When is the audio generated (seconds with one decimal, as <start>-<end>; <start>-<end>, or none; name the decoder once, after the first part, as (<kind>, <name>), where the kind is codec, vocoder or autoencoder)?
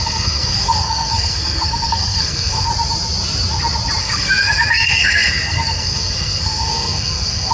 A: 0.0-2.7 (codec, SNAC); 4.0-7.5